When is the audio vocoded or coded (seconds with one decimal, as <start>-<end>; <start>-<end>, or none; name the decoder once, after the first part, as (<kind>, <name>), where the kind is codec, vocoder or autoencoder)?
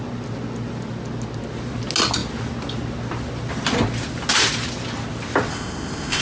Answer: 5.5-6.2 (codec, ZipCodec)